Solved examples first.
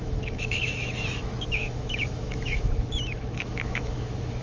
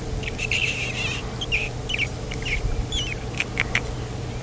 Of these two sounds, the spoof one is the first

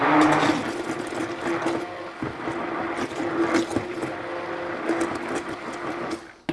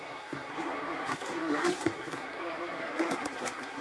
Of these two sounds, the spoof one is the second